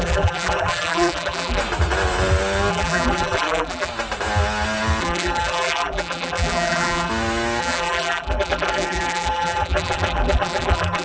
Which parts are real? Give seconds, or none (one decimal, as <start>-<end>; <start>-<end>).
1.6-2.7; 3.9-5.0; 7.1-7.6